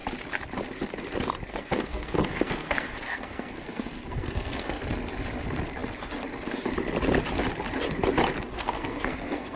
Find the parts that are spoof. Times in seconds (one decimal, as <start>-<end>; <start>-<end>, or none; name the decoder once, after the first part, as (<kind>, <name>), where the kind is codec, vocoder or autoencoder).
1.5-4.8 (codec, SNAC); 8.5-9.6

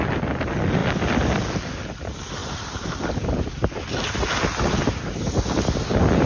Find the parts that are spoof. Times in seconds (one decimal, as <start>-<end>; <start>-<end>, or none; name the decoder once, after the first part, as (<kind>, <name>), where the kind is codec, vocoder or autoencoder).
2.4-3.0 (vocoder, BigVGAN v2)

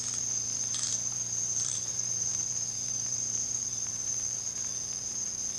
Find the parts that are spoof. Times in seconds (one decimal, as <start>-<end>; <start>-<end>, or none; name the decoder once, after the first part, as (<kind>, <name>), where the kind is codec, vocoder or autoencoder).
0.9-1.9 (vocoder, BigVGAN v2); 2.3-4.4